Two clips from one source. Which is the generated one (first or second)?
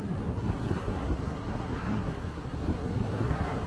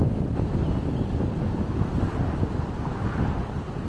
first